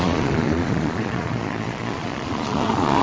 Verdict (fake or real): fake